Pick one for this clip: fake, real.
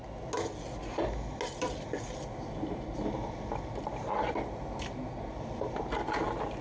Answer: real